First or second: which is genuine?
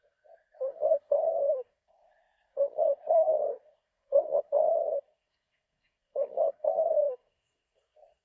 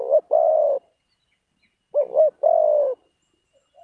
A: second